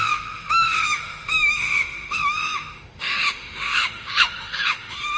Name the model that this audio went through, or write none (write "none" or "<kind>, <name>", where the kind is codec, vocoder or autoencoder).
autoencoder, DAC-VAE